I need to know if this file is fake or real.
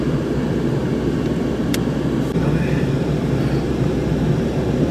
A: fake